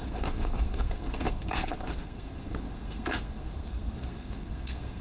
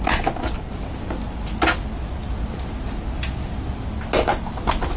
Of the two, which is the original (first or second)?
second